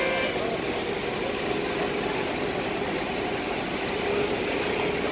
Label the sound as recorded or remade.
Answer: recorded